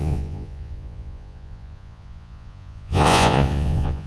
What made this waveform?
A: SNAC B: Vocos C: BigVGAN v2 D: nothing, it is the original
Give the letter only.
B